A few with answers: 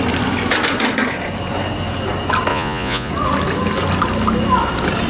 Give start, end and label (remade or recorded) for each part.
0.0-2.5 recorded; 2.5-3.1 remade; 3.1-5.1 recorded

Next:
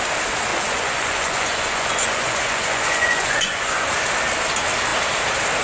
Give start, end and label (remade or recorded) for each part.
0.0-0.5 recorded; 0.5-3.9 remade; 3.9-5.6 recorded

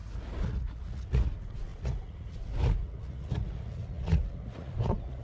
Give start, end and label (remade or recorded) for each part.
0.0-5.2 remade

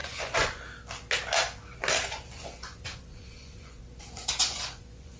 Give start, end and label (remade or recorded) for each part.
0.0-0.6 remade; 0.6-2.0 recorded; 2.0-5.2 remade

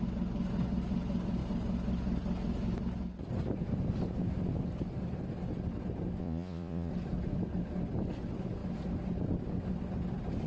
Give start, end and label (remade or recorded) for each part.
0.0-6.2 recorded; 6.2-6.9 remade; 6.9-10.5 recorded

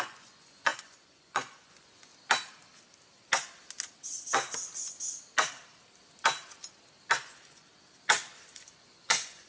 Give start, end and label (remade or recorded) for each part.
0.0-2.1 remade; 2.1-7.2 recorded; 7.2-7.7 remade; 7.7-8.5 recorded; 8.5-9.5 remade